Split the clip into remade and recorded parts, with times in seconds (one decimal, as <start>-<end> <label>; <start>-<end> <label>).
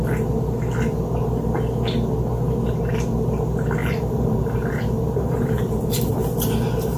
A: 0.0-3.8 recorded; 3.8-7.0 remade